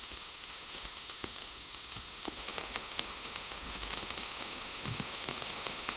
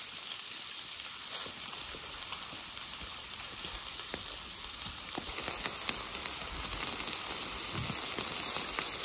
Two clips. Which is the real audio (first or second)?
second